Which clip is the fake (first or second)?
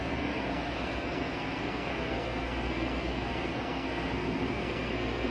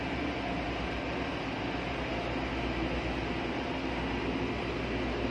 first